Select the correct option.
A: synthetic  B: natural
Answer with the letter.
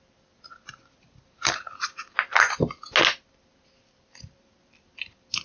B